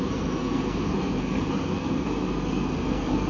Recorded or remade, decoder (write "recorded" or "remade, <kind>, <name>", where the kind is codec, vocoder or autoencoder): remade, codec, SNAC